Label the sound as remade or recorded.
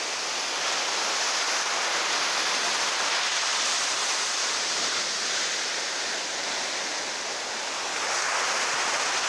recorded